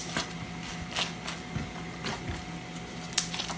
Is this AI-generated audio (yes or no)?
no